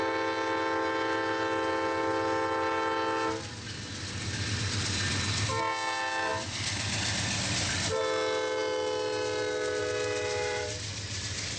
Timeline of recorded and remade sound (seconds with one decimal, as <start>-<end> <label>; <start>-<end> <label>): 0.0-11.6 recorded